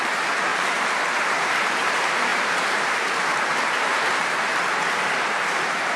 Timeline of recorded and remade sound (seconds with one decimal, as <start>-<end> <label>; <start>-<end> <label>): 0.0-4.5 remade; 4.5-5.2 recorded; 5.2-6.0 remade